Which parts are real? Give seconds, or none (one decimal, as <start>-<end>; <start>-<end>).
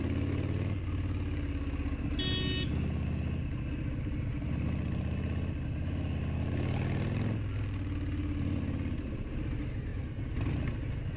0.0-11.2